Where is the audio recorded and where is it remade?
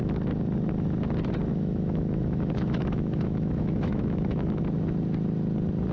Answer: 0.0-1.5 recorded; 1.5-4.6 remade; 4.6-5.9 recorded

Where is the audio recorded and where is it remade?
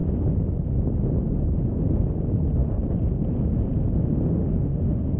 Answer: 0.0-4.4 recorded; 4.4-5.2 remade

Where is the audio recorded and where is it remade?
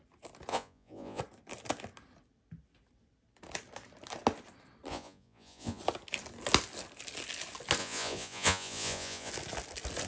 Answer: 0.0-0.5 recorded; 0.5-1.2 remade; 1.2-4.9 recorded; 4.9-5.8 remade; 5.8-7.8 recorded; 7.8-9.3 remade; 9.3-10.1 recorded